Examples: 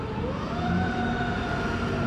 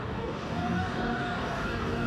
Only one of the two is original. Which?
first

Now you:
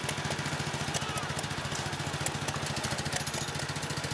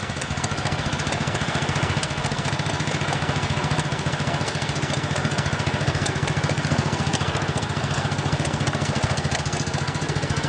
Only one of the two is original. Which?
first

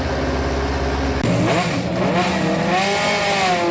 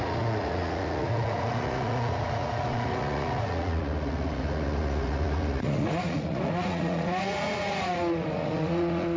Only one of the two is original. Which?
first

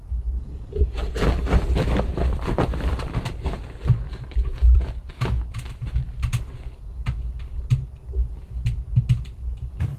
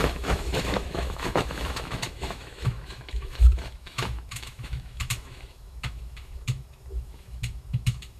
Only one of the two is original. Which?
first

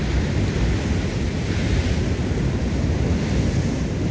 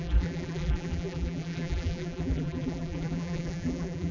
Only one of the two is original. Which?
first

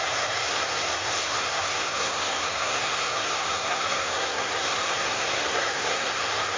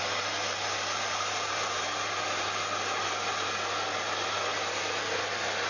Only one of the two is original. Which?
second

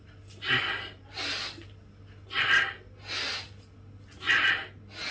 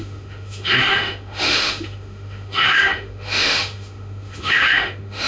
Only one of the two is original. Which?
first